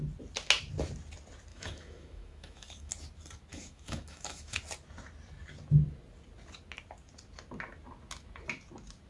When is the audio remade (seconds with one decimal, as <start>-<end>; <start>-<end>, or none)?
1.5-2.9; 3.5-4.6